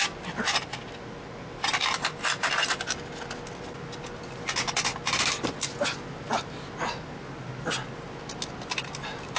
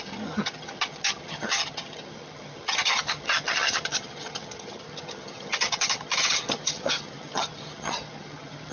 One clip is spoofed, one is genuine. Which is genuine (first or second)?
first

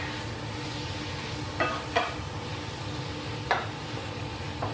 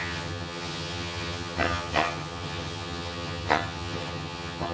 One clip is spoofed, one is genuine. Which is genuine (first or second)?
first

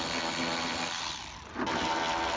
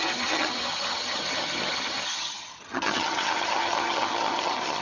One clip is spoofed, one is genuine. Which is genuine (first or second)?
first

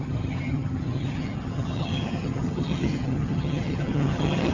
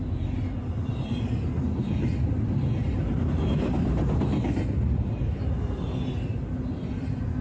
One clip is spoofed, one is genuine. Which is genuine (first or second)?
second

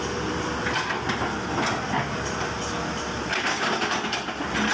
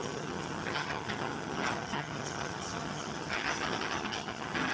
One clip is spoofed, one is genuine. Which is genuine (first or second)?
first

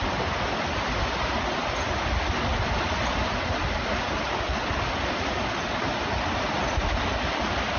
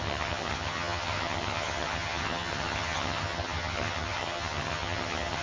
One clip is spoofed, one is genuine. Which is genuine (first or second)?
first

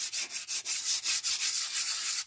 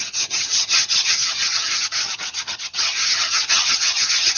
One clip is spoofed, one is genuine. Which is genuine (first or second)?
first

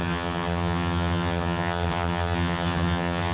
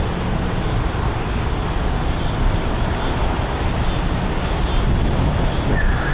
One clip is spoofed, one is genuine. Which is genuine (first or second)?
second